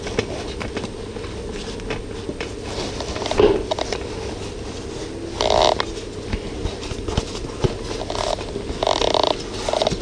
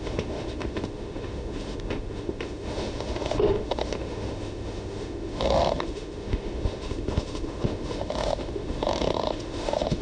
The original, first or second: first